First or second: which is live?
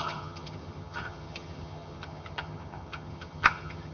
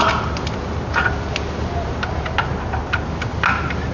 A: second